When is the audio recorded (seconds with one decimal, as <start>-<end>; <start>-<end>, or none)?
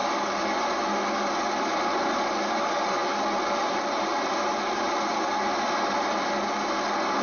0.0-7.2